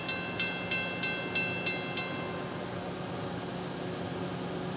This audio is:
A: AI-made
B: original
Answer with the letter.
B